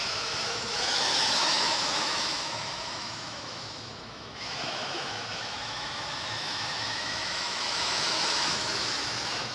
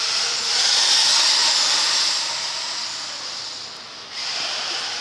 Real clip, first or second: second